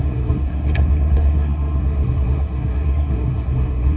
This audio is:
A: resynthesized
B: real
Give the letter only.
A